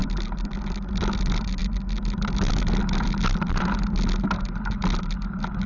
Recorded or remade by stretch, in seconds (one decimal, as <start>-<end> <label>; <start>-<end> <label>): 0.0-5.7 recorded